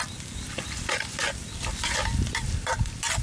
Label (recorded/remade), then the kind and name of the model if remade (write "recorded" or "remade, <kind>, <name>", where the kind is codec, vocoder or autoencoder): recorded